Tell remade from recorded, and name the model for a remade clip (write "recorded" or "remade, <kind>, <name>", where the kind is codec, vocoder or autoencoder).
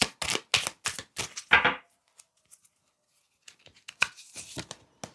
recorded